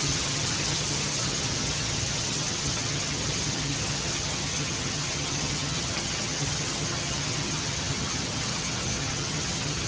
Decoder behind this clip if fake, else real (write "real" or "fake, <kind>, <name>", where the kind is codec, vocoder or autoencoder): fake, vocoder, HiFi-GAN